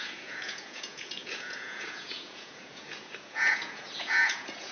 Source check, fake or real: fake